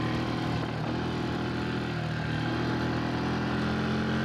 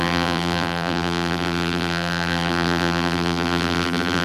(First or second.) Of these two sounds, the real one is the first